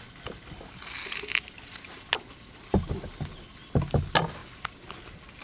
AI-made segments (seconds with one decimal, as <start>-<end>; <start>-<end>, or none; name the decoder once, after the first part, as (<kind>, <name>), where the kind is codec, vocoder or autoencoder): none